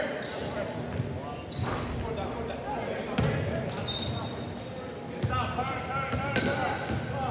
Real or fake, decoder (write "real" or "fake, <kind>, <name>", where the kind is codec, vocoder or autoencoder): real